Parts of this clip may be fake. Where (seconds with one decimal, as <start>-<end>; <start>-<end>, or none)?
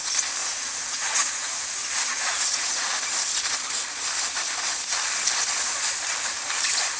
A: 0.4-1.7; 2.1-2.9